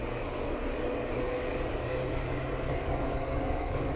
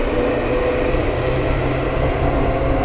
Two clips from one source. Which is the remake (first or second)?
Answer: first